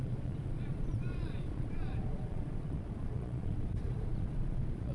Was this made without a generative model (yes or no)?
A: no